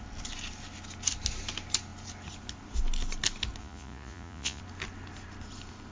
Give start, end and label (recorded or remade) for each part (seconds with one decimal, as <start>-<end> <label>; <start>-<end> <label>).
0.0-3.6 recorded; 3.6-4.6 remade; 4.6-5.9 recorded